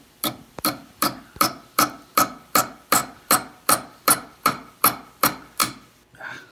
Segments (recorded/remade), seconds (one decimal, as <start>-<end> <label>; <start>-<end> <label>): 0.0-5.6 remade; 5.6-6.5 recorded

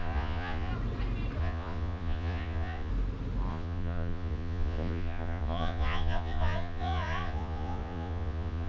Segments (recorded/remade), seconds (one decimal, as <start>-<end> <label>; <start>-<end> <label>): 0.0-0.7 remade; 0.7-1.4 recorded; 1.4-2.9 remade; 2.9-3.5 recorded; 3.5-8.7 remade